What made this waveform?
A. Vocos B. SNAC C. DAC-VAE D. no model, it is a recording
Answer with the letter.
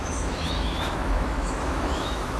C